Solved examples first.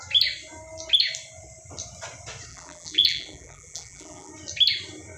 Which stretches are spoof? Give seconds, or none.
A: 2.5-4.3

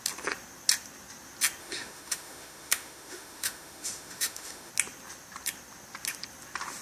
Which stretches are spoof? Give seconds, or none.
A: 1.6-4.7

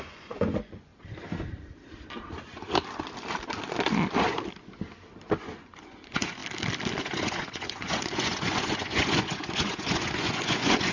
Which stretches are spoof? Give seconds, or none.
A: 0.0-0.9; 5.4-6.4; 7.0-10.9

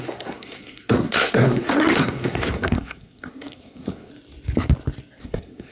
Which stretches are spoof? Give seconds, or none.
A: 0.0-4.1; 5.2-5.7

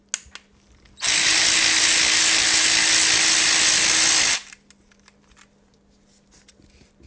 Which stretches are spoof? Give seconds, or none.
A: none

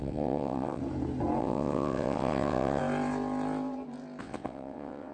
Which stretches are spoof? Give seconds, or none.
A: 0.0-0.8; 1.4-2.8; 4.2-5.1

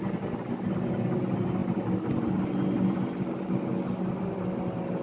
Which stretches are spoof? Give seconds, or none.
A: none

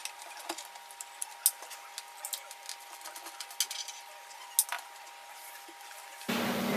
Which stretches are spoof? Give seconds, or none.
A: 6.1-6.8